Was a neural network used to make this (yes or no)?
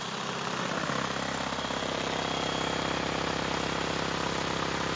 no